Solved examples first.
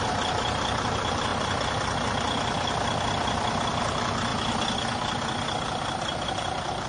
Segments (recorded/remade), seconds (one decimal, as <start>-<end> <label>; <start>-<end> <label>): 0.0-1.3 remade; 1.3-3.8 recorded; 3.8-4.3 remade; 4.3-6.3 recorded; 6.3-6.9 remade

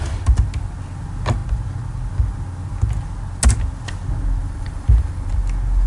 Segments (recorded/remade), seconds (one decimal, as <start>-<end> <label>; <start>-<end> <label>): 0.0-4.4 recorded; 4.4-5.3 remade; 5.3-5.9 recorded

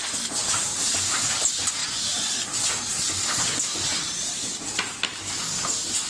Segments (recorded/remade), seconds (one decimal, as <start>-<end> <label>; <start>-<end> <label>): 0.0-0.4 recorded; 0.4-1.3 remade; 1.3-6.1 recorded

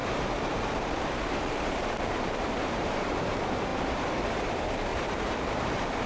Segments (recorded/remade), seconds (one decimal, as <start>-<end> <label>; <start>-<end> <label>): 0.0-6.1 remade

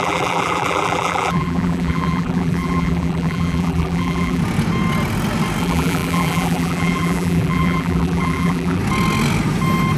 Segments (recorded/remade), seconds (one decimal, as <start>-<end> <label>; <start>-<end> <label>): 0.0-4.4 remade; 4.4-5.6 recorded; 5.6-8.8 remade; 8.8-10.0 recorded